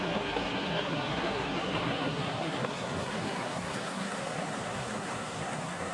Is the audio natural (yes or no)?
no